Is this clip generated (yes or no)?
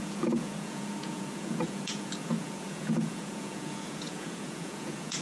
yes